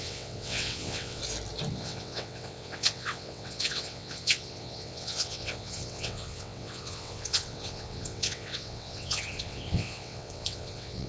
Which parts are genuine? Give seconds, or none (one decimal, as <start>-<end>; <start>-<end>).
1.2-1.7